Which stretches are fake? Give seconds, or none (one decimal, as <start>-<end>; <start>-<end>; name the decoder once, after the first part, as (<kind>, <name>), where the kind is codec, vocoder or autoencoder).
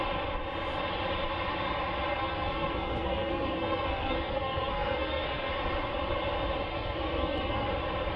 2.1-5.5 (codec, SNAC); 6.7-7.7